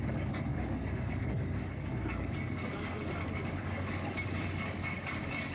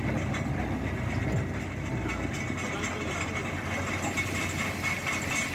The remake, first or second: first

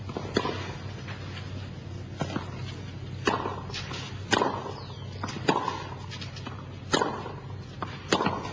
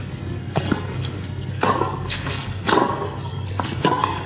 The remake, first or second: second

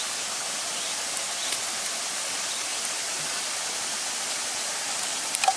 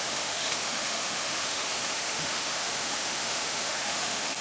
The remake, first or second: second